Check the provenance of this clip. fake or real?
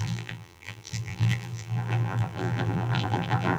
fake